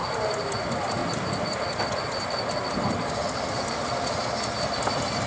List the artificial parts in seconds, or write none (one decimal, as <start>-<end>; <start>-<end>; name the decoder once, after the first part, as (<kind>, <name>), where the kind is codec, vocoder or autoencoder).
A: none